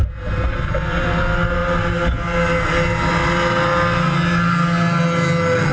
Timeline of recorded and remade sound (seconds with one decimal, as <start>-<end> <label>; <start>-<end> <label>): 0.0-5.7 recorded